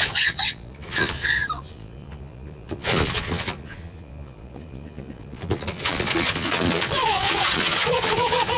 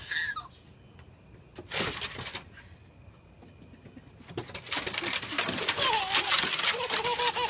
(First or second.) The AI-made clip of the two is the first